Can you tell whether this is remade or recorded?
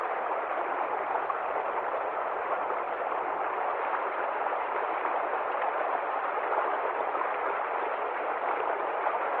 recorded